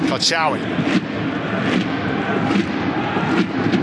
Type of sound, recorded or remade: recorded